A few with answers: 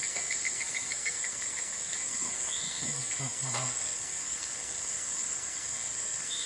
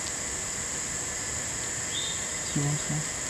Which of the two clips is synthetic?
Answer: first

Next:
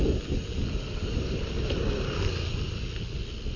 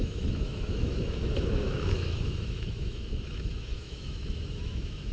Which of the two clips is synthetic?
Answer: second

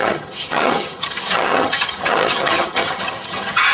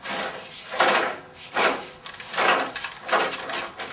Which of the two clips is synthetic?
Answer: first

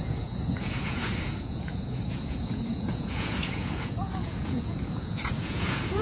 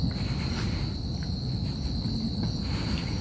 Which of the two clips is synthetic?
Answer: first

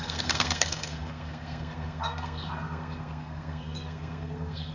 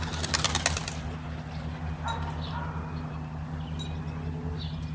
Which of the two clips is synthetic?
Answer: first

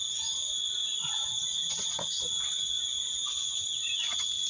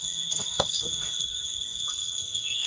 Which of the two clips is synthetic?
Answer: second